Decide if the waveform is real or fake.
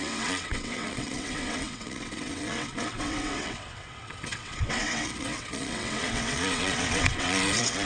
fake